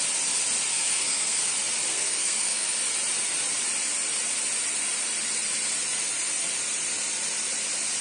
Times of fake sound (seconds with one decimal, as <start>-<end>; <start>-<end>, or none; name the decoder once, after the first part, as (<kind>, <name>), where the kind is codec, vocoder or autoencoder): 0.7-1.5 (codec, SNAC); 1.9-2.7